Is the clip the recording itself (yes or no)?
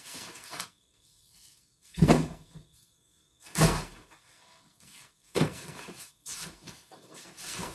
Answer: no